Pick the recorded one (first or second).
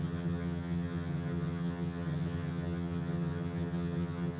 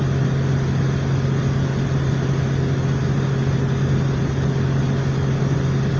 second